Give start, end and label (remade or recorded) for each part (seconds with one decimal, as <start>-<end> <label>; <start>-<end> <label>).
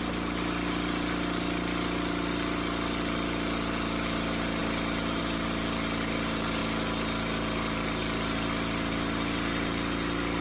0.0-10.4 recorded